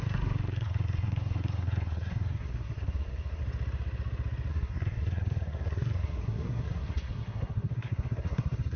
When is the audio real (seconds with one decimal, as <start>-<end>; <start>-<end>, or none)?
3.4-4.5